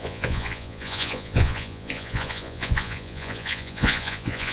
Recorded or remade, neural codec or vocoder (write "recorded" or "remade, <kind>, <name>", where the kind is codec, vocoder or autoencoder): remade, vocoder, Vocos